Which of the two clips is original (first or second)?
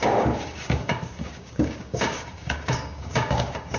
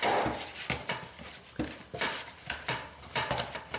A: second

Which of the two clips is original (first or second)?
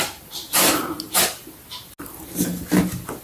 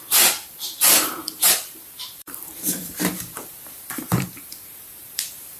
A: first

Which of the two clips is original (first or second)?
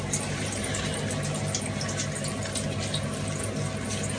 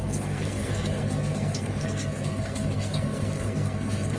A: first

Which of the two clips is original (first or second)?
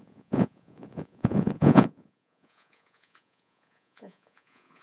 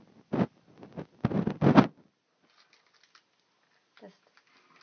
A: second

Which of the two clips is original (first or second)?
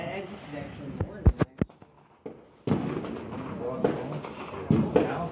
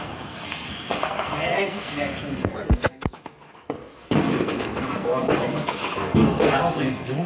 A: first